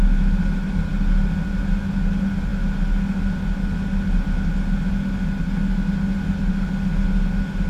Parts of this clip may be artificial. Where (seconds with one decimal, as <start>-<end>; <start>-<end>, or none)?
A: none